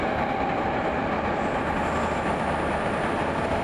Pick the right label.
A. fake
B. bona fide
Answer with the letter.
B